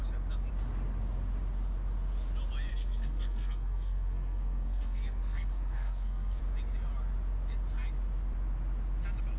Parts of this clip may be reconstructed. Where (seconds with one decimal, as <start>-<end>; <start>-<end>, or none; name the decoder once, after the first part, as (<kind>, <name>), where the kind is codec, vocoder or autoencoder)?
2.7-6.4 (codec, SNAC)